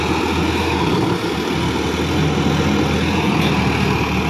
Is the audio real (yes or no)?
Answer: yes